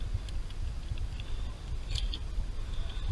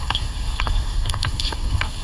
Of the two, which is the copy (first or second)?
second